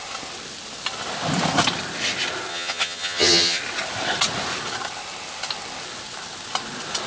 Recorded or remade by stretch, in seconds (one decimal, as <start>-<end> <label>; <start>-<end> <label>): 0.0-2.5 recorded; 2.5-3.6 remade; 3.6-7.1 recorded